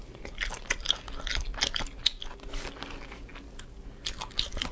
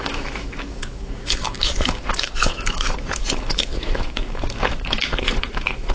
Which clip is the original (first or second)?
first